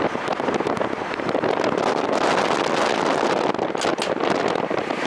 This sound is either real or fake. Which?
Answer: real